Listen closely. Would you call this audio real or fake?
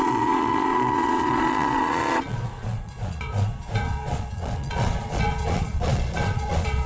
fake